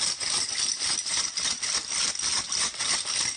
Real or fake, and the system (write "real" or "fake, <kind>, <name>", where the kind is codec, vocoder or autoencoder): real